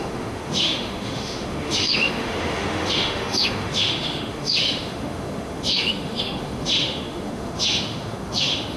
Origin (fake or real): fake